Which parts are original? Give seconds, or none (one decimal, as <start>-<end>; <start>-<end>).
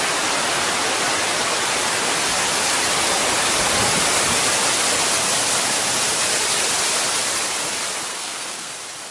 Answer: 0.0-8.1; 8.7-9.1